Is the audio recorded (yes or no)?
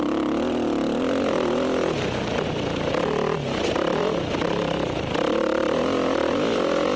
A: yes